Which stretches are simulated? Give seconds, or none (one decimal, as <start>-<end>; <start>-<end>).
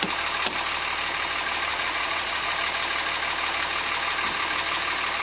1.7-2.5